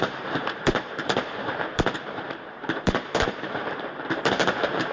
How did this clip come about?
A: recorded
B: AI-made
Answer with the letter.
B